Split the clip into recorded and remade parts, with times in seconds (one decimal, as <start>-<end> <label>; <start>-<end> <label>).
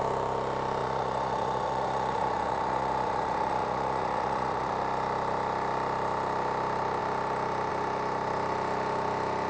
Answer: 0.0-0.8 recorded; 0.8-4.7 remade; 4.7-9.5 recorded